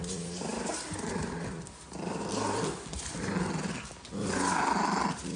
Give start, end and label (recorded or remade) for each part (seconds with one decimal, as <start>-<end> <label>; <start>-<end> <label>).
0.0-5.4 recorded